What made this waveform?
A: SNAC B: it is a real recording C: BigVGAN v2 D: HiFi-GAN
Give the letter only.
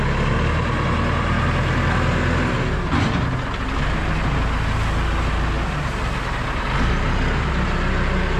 B